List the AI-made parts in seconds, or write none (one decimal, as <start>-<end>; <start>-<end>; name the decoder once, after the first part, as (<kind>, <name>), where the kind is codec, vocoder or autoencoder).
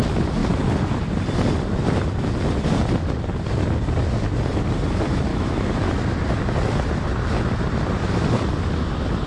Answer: 5.3-6.0 (autoencoder, DAC-VAE)